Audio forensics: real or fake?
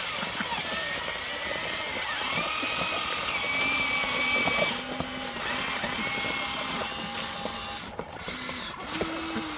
real